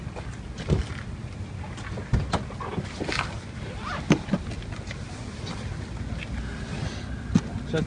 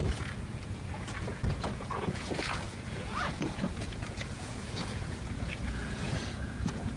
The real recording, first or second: first